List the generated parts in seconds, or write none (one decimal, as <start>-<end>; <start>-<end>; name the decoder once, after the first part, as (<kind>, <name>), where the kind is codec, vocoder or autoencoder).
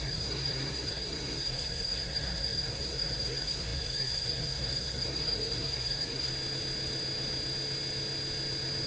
0.0-6.3 (codec, SNAC)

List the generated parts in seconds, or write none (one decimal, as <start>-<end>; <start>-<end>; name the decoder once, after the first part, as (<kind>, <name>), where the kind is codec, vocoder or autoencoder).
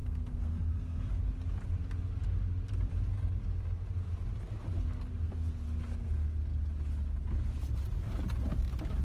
0.0-1.2 (codec, SNAC)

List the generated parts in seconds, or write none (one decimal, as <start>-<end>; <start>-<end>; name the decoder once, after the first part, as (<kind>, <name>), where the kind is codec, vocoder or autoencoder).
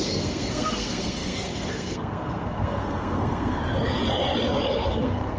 0.0-3.6 (codec, SNAC); 4.9-5.4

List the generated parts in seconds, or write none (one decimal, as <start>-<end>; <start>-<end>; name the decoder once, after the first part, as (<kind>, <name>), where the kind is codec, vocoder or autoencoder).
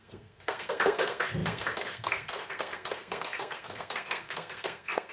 0.0-5.1 (codec, SNAC)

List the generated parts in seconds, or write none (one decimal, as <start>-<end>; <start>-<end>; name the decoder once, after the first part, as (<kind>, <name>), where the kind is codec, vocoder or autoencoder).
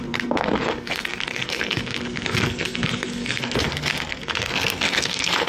0.0-5.5 (codec, SNAC)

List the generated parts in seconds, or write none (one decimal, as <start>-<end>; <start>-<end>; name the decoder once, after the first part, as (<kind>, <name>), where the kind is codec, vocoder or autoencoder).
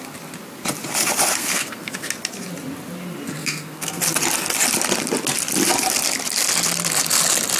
1.4-2.1 (codec, SNAC); 3.4-4.0